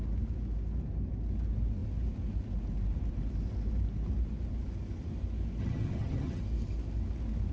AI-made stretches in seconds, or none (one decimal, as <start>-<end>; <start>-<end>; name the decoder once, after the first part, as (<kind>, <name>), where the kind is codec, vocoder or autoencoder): 5.6-6.4 (vocoder, HiFi-GAN)